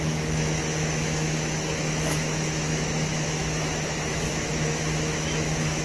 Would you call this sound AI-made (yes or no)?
yes